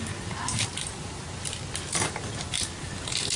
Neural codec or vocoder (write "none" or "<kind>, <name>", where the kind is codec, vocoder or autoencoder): none